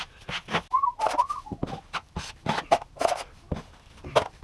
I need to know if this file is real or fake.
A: fake